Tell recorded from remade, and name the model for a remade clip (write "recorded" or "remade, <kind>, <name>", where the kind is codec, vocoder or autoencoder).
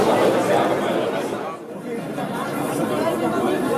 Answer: recorded